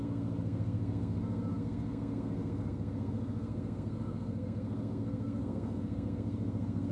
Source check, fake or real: fake